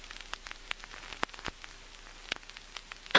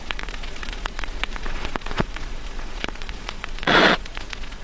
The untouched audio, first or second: first